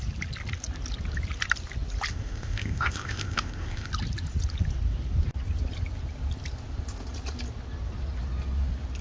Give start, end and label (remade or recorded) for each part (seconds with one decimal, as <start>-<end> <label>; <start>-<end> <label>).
0.0-2.1 recorded; 2.1-3.9 remade; 3.9-9.0 recorded